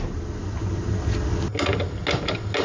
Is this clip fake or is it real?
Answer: real